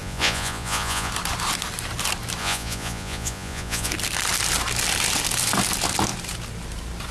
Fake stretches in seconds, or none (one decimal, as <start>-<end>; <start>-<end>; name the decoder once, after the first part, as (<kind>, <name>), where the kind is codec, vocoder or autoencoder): 0.0-1.1 (vocoder, Vocos); 2.4-3.9